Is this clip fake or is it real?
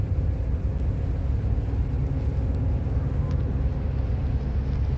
real